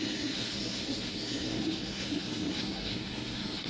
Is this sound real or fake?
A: fake